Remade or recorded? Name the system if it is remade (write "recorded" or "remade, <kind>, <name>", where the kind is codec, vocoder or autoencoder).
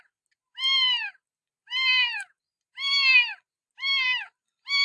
recorded